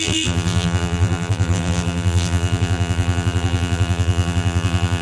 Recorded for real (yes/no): no